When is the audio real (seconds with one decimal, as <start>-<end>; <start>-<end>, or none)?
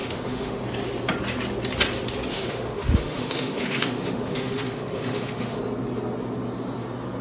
0.6-2.3; 5.6-7.2